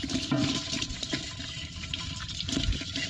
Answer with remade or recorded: remade